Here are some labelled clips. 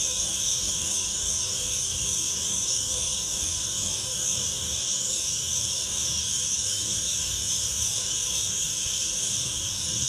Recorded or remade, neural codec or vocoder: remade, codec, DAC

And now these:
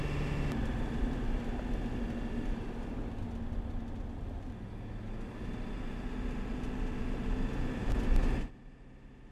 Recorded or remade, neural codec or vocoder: recorded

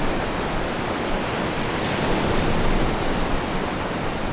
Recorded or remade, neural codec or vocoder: recorded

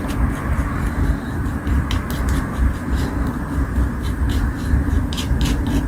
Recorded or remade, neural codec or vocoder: recorded